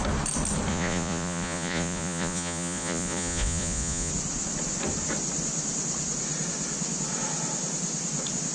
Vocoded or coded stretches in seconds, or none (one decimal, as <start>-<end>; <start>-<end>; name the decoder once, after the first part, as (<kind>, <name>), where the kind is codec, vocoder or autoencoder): 0.7-4.1 (vocoder, Vocos)